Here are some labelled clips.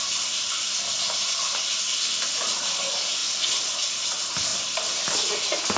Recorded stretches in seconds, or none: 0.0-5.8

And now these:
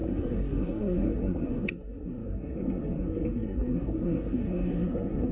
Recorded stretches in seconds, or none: none

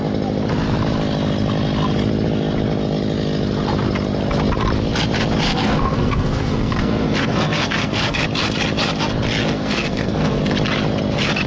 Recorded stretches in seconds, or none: 0.0-5.5; 8.2-9.4; 10.4-11.5

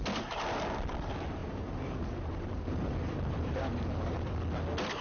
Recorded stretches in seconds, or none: 0.0-1.4; 4.4-5.0

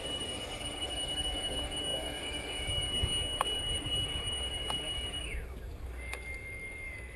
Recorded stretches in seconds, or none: none

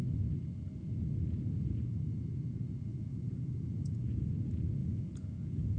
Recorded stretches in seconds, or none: 0.0-2.9; 4.3-4.8